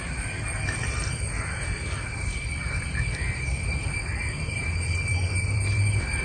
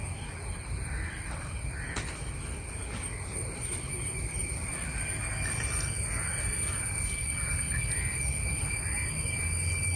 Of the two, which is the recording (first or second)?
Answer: second